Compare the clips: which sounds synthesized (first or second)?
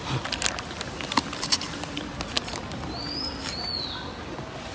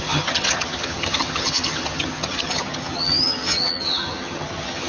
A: second